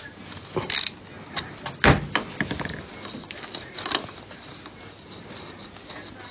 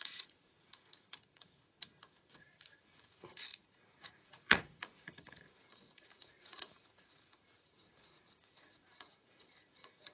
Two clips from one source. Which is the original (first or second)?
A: first